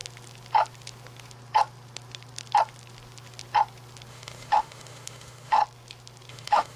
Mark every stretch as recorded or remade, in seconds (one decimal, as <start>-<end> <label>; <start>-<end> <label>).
0.0-4.1 recorded; 4.1-5.6 remade; 5.6-6.3 recorded; 6.3-6.8 remade